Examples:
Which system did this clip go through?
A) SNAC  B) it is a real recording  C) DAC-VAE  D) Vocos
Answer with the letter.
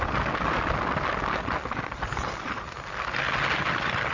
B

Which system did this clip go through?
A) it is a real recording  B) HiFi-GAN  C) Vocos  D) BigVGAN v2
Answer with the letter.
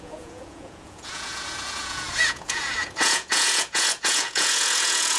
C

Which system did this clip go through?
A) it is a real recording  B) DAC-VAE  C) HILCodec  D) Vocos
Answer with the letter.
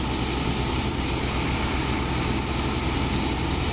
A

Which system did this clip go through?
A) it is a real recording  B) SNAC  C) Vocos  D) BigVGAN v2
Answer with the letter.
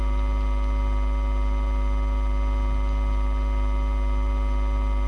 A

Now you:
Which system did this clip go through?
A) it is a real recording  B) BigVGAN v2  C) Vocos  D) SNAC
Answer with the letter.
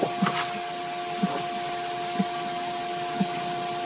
A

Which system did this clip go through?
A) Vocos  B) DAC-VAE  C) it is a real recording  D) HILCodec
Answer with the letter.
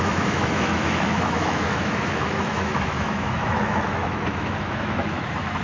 B